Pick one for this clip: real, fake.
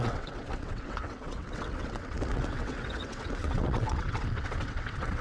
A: fake